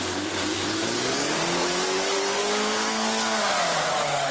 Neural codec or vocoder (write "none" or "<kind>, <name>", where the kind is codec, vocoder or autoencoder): codec, DAC